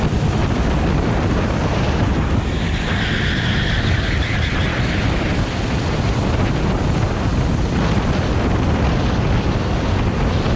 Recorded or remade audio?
recorded